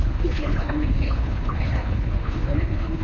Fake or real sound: fake